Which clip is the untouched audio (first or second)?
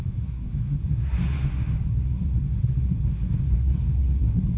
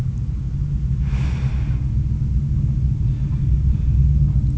second